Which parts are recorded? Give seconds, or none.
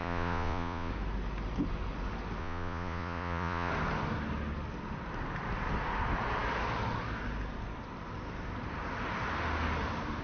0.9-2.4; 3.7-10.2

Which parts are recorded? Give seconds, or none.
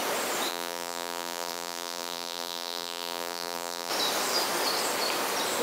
0.0-0.5; 3.9-5.6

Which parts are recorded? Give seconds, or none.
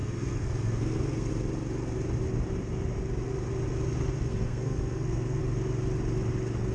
1.3-4.3; 5.4-6.7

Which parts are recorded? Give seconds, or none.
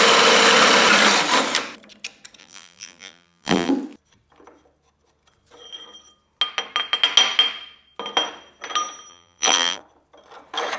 0.0-2.4; 3.7-9.1; 9.8-10.8